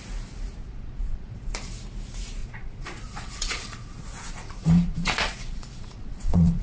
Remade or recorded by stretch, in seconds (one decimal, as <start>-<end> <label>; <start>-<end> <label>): 0.0-0.6 recorded; 0.6-1.5 remade; 1.5-2.4 recorded; 2.4-6.6 remade